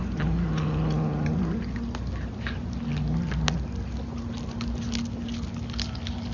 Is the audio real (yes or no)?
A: yes